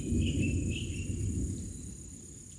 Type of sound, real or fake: real